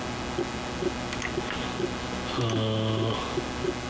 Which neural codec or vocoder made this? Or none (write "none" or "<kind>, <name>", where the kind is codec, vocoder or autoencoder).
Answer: none